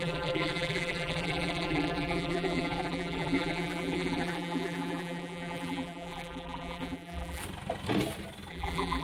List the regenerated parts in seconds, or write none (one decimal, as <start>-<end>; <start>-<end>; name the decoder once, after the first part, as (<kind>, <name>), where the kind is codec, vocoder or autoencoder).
0.0-7.4 (vocoder, BigVGAN v2); 8.5-9.0